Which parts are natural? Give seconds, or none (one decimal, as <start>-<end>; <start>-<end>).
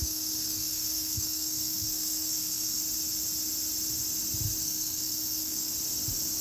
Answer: 2.8-4.6; 5.7-6.4